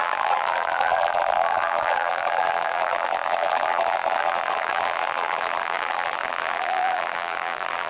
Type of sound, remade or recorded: remade